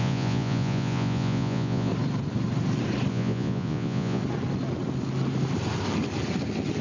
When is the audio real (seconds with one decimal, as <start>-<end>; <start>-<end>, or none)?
1.9-3.1; 4.2-6.8